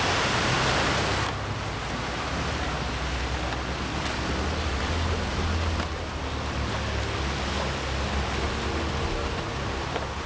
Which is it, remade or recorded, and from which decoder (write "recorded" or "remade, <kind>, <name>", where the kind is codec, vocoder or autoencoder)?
recorded